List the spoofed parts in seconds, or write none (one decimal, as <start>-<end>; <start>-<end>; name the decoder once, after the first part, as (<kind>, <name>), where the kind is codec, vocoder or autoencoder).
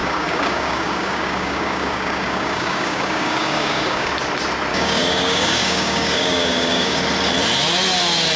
0.0-4.1 (codec, DAC); 4.7-7.0